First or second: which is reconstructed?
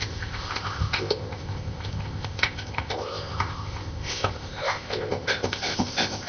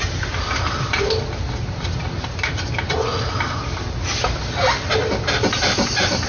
first